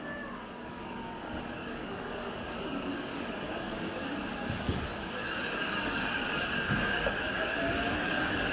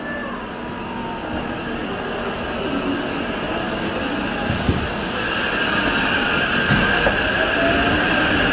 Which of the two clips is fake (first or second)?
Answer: first